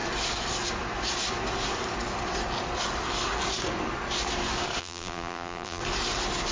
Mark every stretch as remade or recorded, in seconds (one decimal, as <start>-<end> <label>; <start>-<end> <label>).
0.0-4.8 recorded; 4.8-5.8 remade; 5.8-6.5 recorded